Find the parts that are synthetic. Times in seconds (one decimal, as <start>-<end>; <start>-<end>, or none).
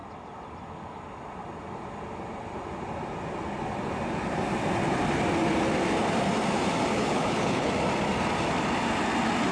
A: 6.9-7.7